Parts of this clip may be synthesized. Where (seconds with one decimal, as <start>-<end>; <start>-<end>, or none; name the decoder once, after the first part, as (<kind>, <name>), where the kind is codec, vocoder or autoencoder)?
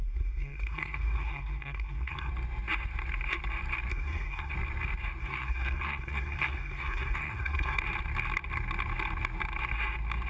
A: 0.0-2.3 (codec, SNAC); 3.9-4.5; 5.2-7.8